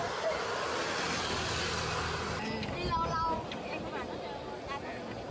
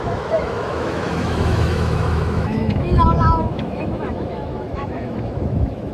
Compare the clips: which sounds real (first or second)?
first